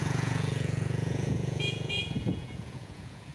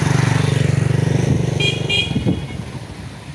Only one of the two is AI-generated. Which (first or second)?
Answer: first